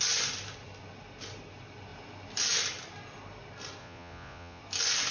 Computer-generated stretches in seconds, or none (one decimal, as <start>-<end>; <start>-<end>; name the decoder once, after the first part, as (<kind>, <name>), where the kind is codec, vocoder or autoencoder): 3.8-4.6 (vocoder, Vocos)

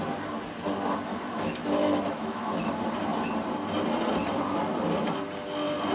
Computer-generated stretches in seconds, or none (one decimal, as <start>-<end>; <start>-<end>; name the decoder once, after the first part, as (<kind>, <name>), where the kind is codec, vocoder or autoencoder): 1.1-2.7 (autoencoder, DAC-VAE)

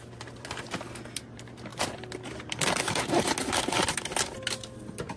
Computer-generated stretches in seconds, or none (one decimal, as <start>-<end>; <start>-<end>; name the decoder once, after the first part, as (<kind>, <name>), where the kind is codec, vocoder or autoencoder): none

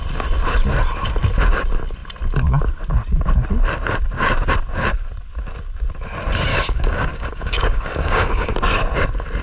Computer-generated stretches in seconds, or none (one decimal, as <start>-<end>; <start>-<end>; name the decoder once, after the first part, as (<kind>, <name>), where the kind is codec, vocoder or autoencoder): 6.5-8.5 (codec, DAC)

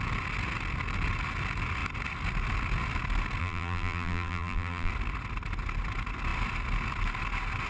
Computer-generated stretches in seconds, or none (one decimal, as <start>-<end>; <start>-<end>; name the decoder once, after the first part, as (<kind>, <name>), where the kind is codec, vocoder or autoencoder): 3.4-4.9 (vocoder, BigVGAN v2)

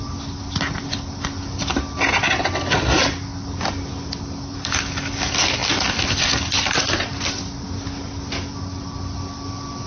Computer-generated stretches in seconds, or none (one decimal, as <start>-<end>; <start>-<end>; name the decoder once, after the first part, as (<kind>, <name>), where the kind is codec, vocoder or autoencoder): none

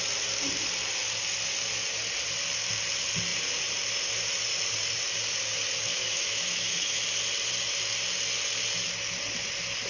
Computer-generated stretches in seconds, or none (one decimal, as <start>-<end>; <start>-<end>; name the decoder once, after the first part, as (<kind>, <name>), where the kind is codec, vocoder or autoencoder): 5.9-7.0 (autoencoder, DAC-VAE)

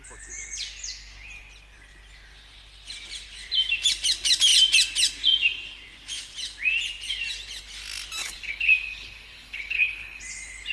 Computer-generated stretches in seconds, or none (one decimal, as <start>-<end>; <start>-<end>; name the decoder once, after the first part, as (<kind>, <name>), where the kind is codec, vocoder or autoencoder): 8.2-10.2 (codec, HILCodec)